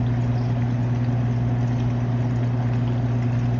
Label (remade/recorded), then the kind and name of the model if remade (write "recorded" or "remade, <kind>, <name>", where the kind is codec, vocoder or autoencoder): recorded